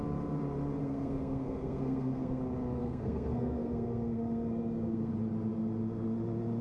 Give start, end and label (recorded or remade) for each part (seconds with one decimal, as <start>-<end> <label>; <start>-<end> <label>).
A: 0.0-0.8 recorded; 0.8-2.4 remade; 2.4-2.8 recorded; 2.8-5.1 remade; 5.1-6.6 recorded